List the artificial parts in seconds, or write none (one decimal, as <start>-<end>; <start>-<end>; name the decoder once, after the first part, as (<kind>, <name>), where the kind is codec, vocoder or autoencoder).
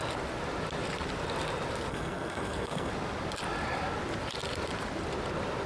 1.9-2.9 (codec, SNAC)